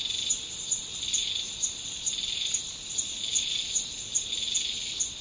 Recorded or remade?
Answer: recorded